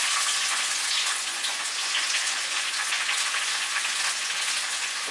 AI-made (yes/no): yes